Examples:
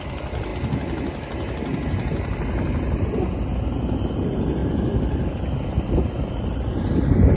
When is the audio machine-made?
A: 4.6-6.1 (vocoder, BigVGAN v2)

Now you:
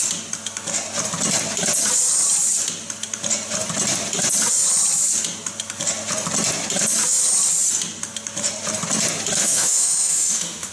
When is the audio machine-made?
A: 9.4-10.7 (autoencoder, DAC-VAE)

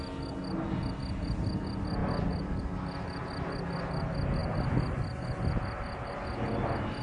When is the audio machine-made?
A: none